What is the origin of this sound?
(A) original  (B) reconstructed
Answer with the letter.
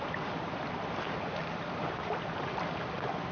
A